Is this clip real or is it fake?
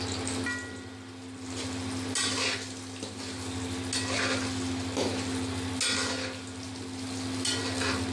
real